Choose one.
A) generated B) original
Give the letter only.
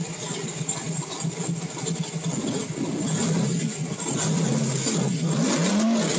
B